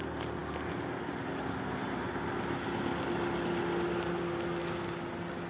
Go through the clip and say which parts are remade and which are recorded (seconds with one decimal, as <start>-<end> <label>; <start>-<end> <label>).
0.0-5.5 recorded